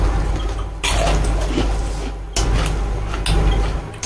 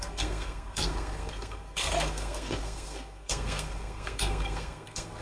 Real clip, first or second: first